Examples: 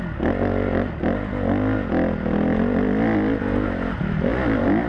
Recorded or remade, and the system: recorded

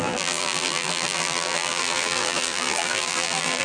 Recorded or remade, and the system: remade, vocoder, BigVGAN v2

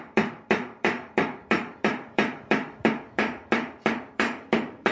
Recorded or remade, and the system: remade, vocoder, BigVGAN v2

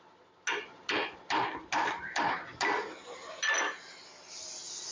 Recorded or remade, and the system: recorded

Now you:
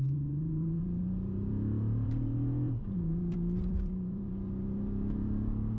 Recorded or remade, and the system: remade, vocoder, BigVGAN v2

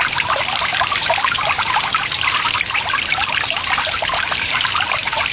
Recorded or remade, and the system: remade, vocoder, BigVGAN v2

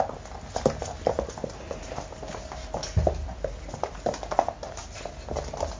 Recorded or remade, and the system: recorded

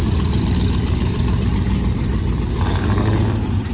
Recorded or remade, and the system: remade, vocoder, BigVGAN v2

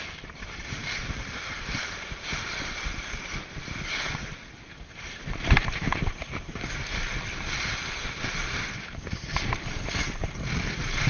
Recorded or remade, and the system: remade, vocoder, BigVGAN v2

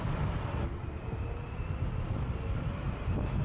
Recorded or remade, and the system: recorded